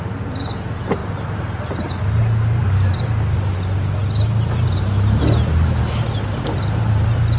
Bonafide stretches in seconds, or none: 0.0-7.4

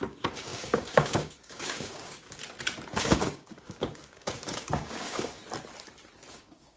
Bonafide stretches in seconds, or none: 2.4-3.0; 5.4-6.3

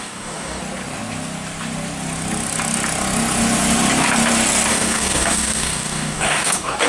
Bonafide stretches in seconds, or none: 0.6-4.7